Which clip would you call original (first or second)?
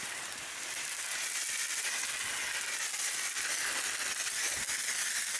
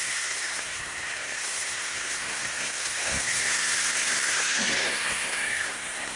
first